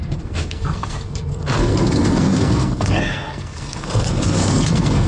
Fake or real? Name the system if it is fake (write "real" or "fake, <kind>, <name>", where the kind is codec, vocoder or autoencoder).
fake, codec, SNAC